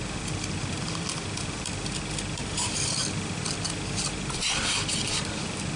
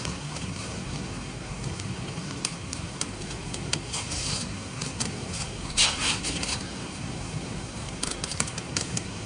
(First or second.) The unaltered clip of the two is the first